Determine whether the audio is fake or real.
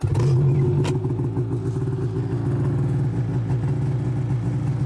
real